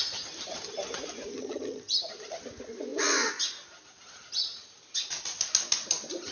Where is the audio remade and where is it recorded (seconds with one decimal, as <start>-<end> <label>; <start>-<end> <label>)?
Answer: 0.0-1.3 recorded; 1.3-2.0 remade; 2.0-6.3 recorded